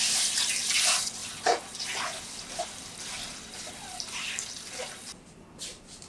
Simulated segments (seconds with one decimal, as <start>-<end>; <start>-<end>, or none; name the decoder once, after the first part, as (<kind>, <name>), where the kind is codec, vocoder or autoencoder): 0.0-6.1 (vocoder, BigVGAN v2)